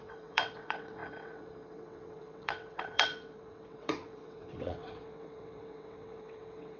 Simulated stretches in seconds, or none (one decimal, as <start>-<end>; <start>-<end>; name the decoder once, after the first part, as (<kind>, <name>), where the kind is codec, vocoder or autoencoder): 0.0-6.8 (vocoder, WaveNeXt)